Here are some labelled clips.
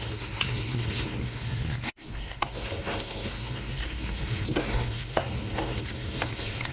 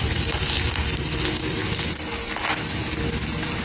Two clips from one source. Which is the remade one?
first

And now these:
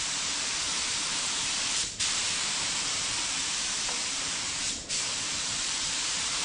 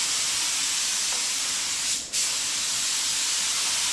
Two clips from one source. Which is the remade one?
first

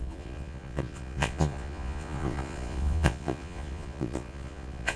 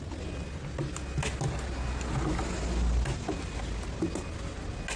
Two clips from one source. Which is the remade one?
first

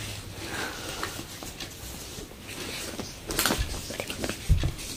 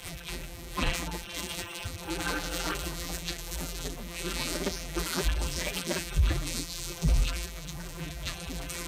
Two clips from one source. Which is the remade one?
second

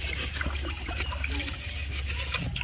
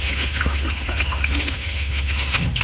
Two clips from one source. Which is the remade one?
second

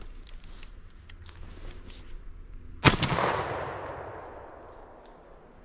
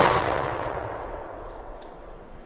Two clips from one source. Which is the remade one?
second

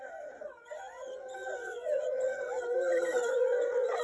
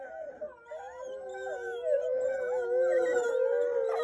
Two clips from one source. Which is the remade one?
first